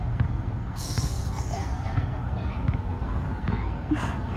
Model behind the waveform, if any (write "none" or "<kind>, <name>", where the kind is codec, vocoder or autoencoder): codec, SNAC